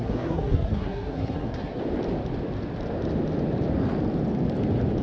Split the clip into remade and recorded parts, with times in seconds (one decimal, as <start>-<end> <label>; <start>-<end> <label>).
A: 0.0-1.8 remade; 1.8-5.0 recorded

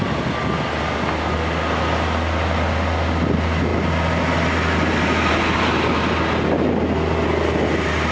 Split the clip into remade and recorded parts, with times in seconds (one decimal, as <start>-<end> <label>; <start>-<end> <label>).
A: 0.0-8.1 recorded

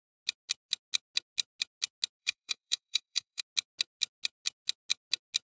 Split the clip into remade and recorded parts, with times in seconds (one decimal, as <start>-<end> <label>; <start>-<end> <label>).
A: 0.0-2.2 recorded; 2.2-3.4 remade; 3.4-5.5 recorded

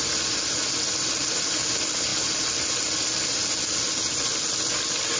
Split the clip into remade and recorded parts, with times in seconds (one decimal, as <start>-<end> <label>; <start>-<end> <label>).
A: 0.0-5.2 recorded

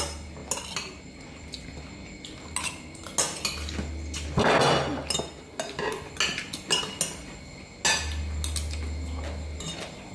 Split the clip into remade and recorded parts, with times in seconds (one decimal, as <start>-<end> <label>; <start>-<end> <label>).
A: 0.0-10.1 recorded